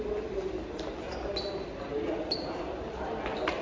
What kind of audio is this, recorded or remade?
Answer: recorded